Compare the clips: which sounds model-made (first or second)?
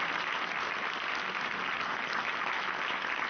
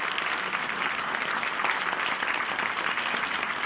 second